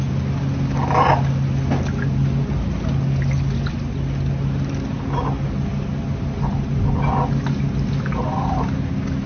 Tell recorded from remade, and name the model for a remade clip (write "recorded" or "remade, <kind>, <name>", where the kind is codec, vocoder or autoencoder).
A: recorded